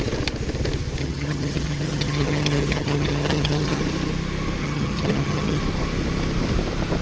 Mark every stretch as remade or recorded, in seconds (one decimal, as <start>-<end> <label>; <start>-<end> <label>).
0.0-1.0 recorded; 1.0-3.8 remade; 3.8-4.6 recorded; 4.6-5.6 remade; 5.6-7.0 recorded